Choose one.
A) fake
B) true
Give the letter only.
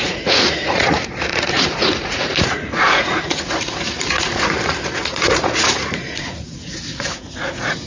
A